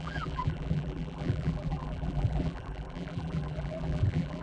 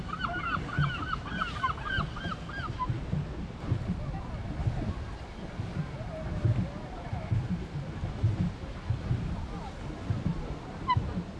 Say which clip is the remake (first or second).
first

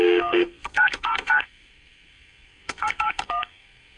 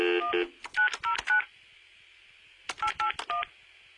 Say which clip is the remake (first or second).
first